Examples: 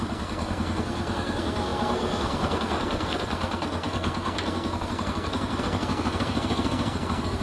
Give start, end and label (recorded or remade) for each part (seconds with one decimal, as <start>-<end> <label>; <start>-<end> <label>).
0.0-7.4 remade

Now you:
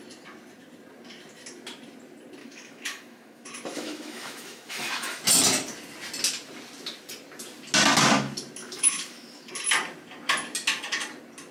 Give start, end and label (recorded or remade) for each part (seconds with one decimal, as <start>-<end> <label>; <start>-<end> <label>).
0.0-2.4 recorded; 2.4-5.2 remade; 5.2-8.6 recorded; 8.6-9.5 remade; 9.5-11.5 recorded

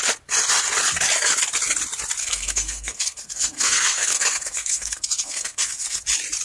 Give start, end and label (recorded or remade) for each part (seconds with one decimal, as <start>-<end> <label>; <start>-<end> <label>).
0.0-2.2 recorded; 2.2-6.0 remade; 6.0-6.4 recorded

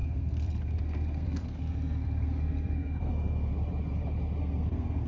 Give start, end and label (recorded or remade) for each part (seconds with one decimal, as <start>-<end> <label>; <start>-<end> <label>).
0.0-3.5 remade; 3.5-4.4 recorded; 4.4-5.1 remade